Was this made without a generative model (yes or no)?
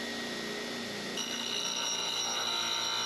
yes